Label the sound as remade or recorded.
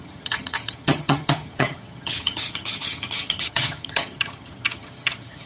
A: remade